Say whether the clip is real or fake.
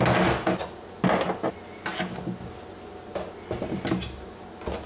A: real